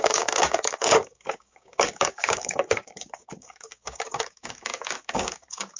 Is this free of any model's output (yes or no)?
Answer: no